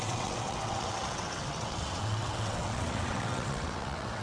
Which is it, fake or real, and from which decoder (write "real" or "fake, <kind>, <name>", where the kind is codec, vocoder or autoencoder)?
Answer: fake, vocoder, WaveNeXt